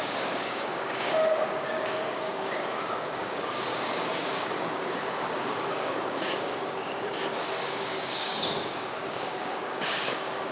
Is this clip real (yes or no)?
no